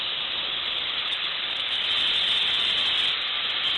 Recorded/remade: recorded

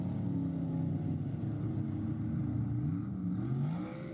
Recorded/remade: recorded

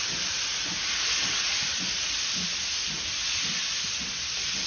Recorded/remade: recorded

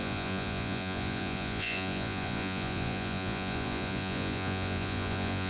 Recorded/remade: remade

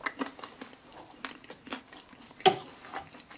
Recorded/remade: recorded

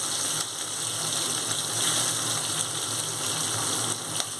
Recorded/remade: recorded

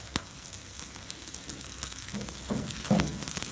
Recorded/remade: remade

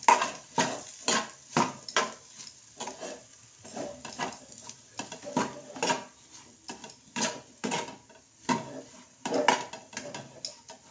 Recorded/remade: recorded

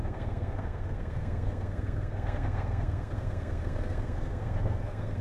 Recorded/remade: remade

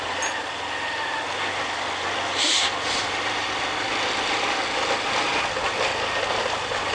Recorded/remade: recorded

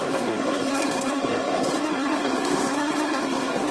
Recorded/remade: remade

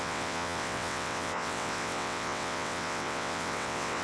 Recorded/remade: remade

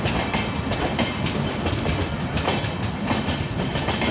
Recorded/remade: recorded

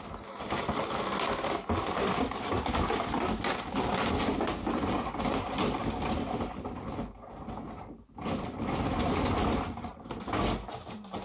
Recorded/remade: recorded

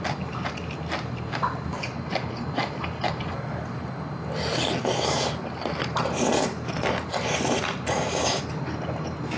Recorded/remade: recorded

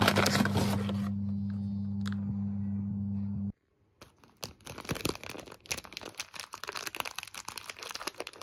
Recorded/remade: recorded